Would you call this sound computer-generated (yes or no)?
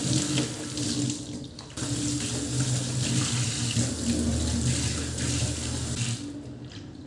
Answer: no